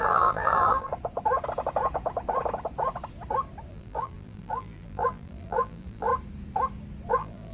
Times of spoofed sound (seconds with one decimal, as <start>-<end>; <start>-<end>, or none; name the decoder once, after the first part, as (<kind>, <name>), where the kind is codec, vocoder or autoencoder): 0.0-0.9 (vocoder, BigVGAN v2); 3.7-6.1; 7.1-7.5